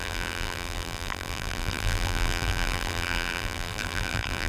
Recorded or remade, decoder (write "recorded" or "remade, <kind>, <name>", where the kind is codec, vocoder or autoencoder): remade, vocoder, BigVGAN v2